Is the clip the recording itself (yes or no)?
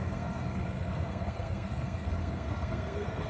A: no